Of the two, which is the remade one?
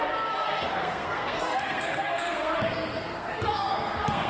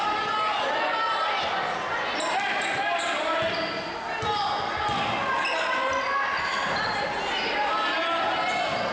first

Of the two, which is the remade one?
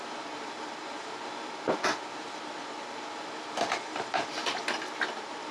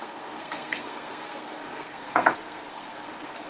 second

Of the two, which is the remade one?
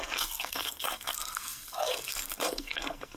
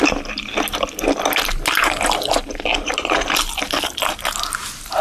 first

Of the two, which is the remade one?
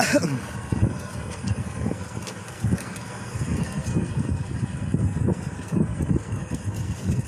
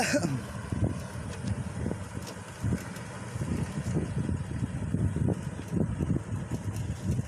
first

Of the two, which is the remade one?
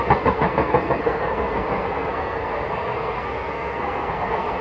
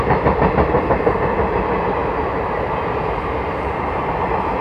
first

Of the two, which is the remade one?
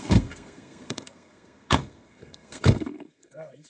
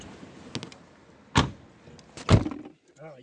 first